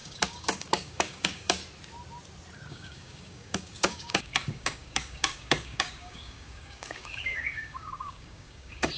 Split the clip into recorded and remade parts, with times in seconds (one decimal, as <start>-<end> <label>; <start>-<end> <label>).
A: 0.0-1.6 remade; 1.6-2.7 recorded; 2.7-9.0 remade